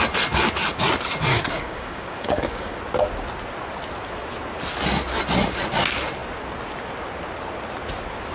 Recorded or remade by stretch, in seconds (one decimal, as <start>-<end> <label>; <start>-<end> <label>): 0.0-1.3 recorded; 1.3-2.8 remade; 2.8-8.3 recorded

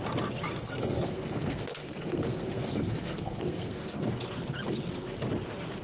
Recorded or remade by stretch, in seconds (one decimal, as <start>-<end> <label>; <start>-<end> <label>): 0.0-0.6 recorded; 0.6-4.1 remade; 4.1-5.8 recorded

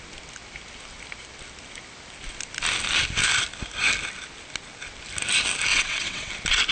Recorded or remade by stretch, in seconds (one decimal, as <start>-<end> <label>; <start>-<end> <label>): 0.0-5.7 recorded; 5.7-6.3 remade; 6.3-6.7 recorded

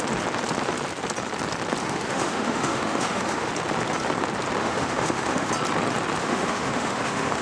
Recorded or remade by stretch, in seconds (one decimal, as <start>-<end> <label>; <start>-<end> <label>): 0.0-1.8 recorded; 1.8-3.5 remade; 3.5-4.6 recorded; 4.6-5.5 remade; 5.5-6.2 recorded; 6.2-7.4 remade

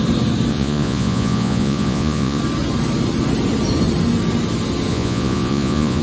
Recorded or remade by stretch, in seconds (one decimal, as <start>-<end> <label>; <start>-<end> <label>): 0.0-0.5 recorded; 0.5-2.4 remade; 2.4-4.9 recorded; 4.9-6.0 remade

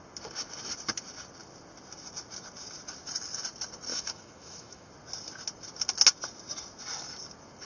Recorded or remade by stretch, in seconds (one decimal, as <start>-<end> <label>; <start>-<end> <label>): 0.0-3.9 recorded; 3.9-4.9 remade; 4.9-7.7 recorded